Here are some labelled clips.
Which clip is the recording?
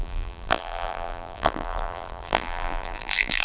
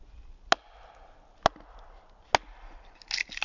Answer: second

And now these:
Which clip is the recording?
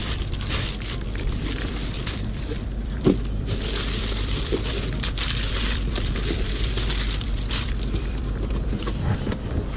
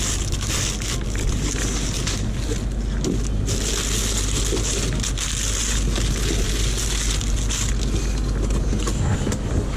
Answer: second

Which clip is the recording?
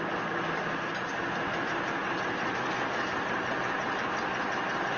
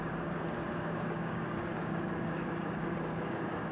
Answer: first